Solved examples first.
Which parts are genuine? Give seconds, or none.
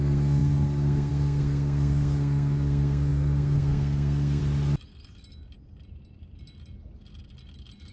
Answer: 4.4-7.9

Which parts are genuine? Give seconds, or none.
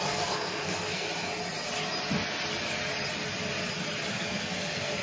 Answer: 1.1-4.1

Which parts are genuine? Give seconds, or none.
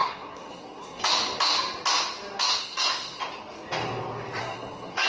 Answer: 1.0-2.6; 3.2-4.4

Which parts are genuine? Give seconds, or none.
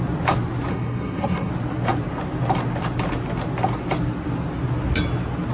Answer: 0.0-0.7; 1.5-5.5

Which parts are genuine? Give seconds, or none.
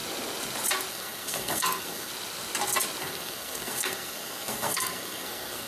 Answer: 0.0-0.9; 2.1-3.0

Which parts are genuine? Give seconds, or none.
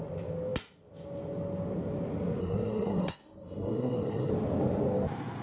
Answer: 0.0-2.4; 4.3-5.4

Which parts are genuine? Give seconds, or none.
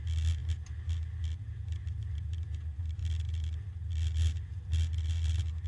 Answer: 0.0-5.7